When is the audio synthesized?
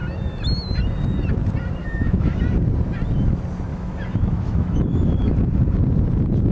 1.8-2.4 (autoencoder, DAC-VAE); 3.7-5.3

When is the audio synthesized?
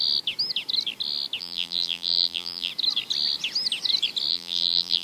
1.4-2.7 (vocoder, BigVGAN v2); 4.3-5.0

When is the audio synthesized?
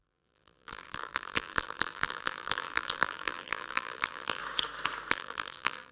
0.0-4.4 (vocoder, BigVGAN v2); 5.1-5.9